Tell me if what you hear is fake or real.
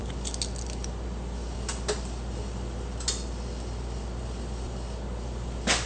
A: real